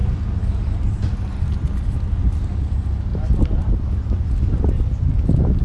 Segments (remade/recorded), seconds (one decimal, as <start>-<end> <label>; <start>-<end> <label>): 0.0-5.6 recorded